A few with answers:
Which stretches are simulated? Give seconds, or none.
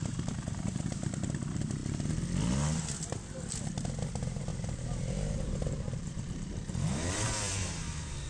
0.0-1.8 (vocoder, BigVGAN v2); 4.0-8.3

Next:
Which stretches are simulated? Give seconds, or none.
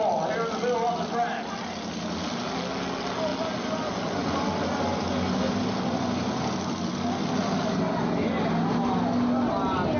none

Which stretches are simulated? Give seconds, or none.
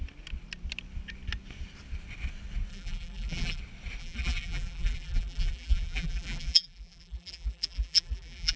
2.7-3.6 (vocoder, BigVGAN v2); 4.0-8.6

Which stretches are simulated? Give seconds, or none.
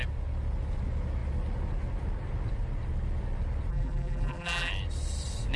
3.7-4.7 (vocoder, BigVGAN v2)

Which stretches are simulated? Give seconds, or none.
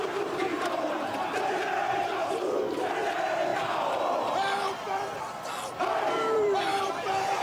0.0-3.5 (vocoder, BigVGAN v2); 6.1-7.4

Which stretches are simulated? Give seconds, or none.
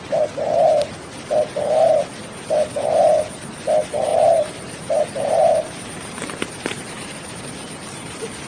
4.1-7.4 (vocoder, BigVGAN v2)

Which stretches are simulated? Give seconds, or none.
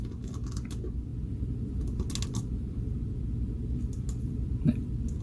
none